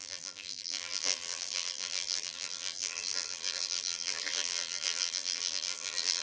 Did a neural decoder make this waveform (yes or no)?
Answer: yes